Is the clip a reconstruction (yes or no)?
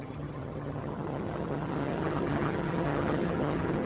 yes